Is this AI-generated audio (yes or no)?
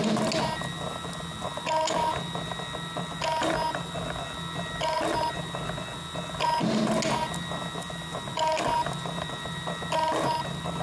no